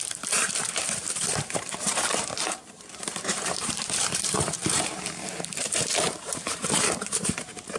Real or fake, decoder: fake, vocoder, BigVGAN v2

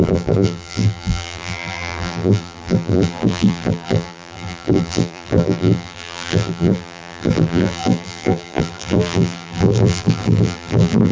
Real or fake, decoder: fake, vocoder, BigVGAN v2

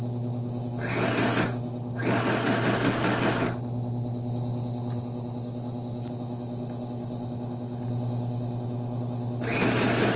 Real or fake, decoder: real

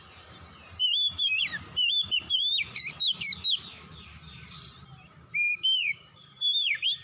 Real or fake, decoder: fake, vocoder, BigVGAN v2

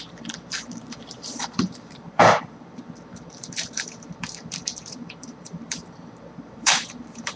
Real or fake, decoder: fake, vocoder, BigVGAN v2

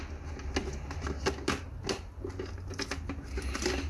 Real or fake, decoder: real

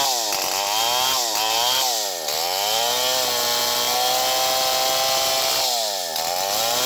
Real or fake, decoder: real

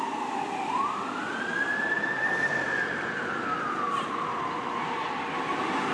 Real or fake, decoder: fake, vocoder, BigVGAN v2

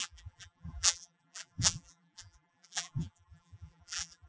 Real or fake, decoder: fake, vocoder, BigVGAN v2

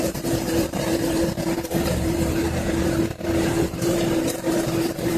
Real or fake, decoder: fake, vocoder, BigVGAN v2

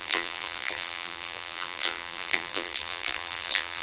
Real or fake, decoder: fake, vocoder, BigVGAN v2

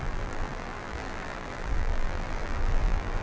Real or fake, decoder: fake, vocoder, BigVGAN v2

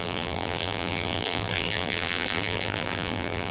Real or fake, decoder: fake, vocoder, BigVGAN v2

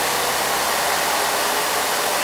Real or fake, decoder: real